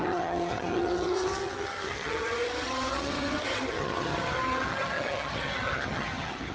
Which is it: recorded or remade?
remade